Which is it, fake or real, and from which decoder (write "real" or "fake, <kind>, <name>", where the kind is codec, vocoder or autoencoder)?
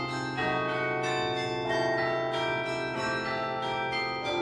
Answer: real